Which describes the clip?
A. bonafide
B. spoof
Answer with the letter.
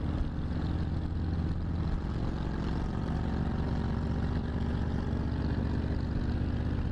A